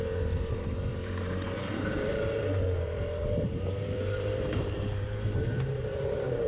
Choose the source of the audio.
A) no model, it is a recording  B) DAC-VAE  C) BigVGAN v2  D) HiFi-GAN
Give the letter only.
C